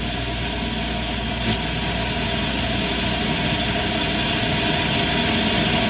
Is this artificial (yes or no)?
no